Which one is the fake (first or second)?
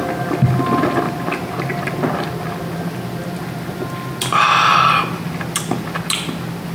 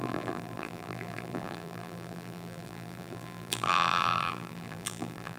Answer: second